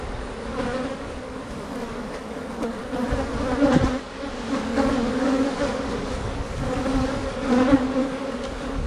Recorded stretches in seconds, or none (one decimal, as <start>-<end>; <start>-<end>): 2.8-4.0